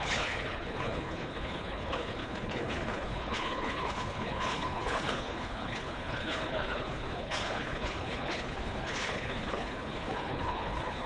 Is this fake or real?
fake